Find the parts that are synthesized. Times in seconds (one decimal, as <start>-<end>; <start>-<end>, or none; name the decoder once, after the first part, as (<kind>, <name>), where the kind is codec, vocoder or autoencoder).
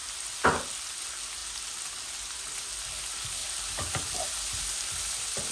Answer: none